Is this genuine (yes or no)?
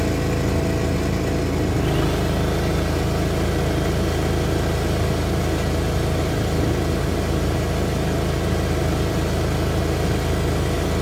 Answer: yes